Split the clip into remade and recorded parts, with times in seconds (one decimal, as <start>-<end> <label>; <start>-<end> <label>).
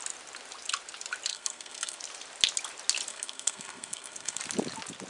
0.0-1.3 recorded; 1.3-2.0 remade; 2.0-3.1 recorded; 3.1-4.4 remade; 4.4-5.1 recorded